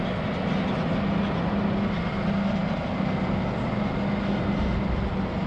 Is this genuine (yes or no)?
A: yes